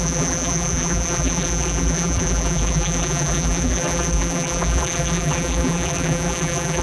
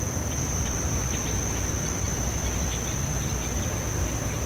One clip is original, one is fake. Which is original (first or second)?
second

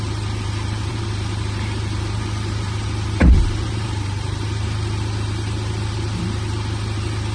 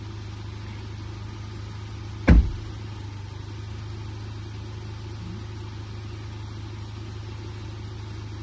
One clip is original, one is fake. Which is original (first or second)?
second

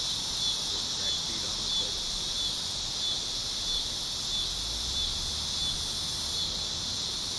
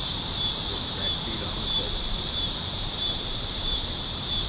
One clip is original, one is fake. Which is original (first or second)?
first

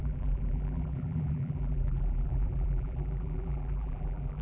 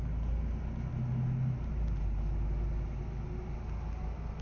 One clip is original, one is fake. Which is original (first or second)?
second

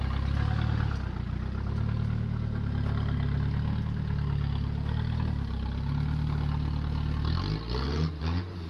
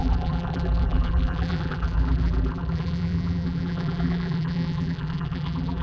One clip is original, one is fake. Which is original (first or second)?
first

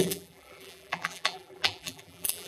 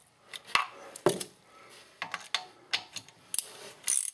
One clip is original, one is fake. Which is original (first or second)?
second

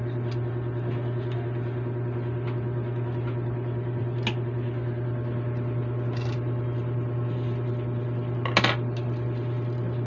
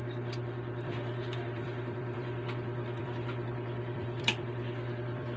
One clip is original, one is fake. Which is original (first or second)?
first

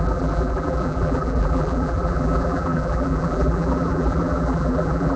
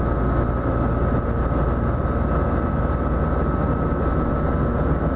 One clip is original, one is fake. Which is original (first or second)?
second